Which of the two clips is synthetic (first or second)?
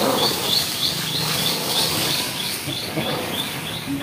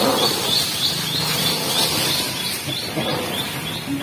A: first